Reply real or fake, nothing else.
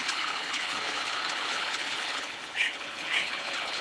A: fake